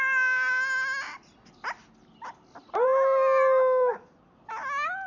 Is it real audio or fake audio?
real